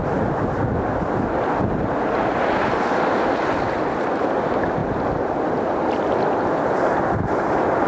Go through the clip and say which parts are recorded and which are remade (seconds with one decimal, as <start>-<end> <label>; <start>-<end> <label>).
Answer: 0.0-4.8 recorded; 4.8-6.0 remade; 6.0-7.9 recorded